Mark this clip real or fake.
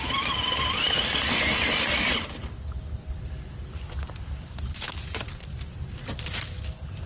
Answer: real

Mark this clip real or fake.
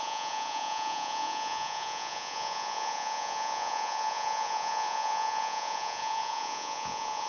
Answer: fake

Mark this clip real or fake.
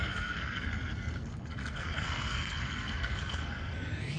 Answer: fake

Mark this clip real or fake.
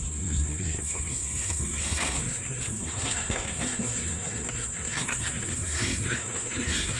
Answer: fake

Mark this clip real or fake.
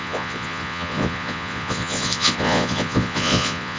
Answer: fake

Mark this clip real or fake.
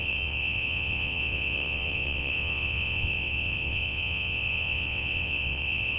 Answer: fake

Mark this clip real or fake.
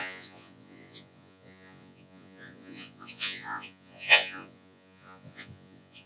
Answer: fake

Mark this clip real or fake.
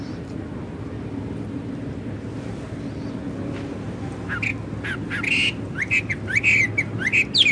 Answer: real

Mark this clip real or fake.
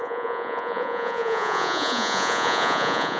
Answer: fake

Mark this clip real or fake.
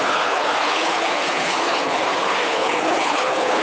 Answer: fake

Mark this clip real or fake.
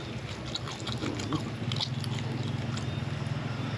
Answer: real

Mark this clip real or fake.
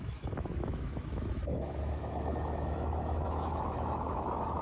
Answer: fake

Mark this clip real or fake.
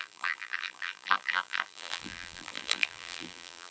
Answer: fake